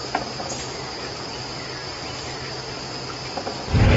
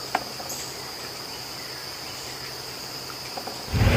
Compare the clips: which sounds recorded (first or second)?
first